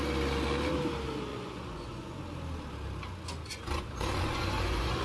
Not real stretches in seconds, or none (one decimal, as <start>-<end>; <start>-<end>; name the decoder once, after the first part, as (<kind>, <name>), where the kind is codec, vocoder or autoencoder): 1.3-2.2 (vocoder, Vocos); 3.5-5.0